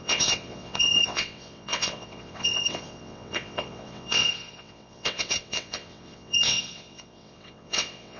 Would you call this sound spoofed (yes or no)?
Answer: yes